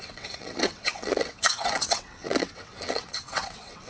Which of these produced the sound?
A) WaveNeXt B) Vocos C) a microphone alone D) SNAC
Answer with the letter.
A